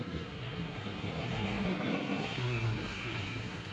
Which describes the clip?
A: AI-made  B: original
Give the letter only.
A